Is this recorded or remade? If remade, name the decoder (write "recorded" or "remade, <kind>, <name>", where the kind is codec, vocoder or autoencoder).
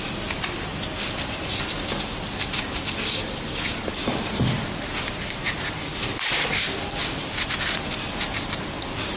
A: recorded